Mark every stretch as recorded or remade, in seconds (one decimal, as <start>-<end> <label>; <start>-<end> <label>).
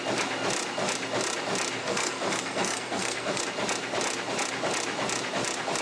0.0-1.8 recorded; 1.8-3.4 remade; 3.4-5.8 recorded